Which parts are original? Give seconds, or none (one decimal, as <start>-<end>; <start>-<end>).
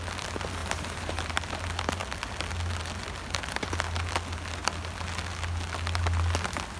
0.0-0.6; 1.6-6.8